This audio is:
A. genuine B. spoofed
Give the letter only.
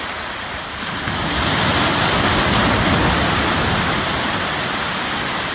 A